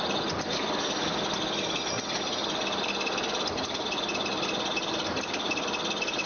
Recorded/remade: recorded